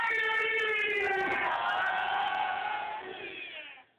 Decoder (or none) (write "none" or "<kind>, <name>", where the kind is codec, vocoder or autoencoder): vocoder, Vocos